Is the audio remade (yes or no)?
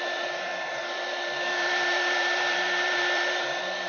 yes